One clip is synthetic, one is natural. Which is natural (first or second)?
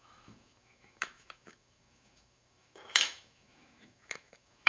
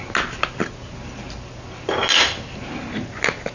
second